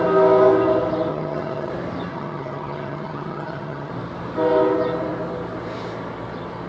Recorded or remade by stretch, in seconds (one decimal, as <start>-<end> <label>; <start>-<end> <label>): 0.0-1.1 recorded; 1.1-1.7 remade; 1.7-2.1 recorded; 2.1-3.9 remade; 3.9-6.7 recorded